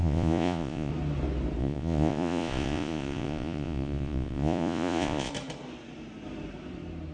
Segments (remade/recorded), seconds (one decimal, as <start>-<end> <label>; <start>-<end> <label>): 0.0-0.9 remade; 0.9-1.6 recorded; 1.6-5.3 remade; 5.3-7.1 recorded